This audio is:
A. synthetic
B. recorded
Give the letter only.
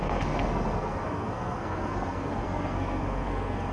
A